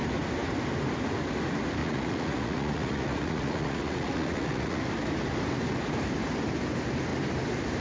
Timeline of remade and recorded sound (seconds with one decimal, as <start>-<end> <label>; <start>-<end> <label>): 0.0-1.8 recorded; 1.8-4.8 remade; 4.8-7.8 recorded